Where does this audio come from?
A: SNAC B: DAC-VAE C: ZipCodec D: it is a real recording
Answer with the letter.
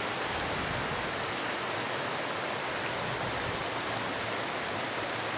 D